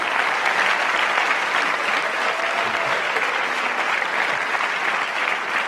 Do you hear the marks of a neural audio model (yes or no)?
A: no